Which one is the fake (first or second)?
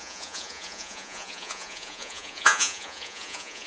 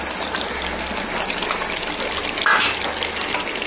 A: first